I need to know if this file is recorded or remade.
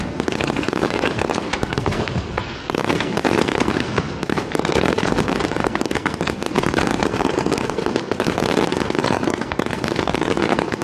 remade